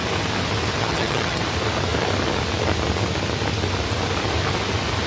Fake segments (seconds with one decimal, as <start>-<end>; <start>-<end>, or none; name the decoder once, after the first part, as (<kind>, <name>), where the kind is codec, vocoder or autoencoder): 0.8-1.4 (vocoder, HiFi-GAN)